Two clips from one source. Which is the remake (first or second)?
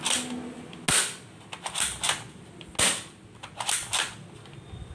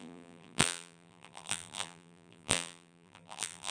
second